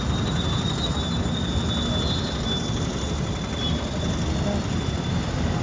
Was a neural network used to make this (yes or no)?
no